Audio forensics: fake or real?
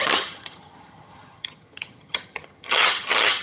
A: fake